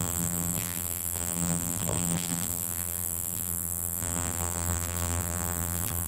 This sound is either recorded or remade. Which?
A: remade